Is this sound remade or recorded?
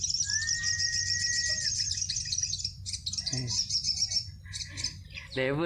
recorded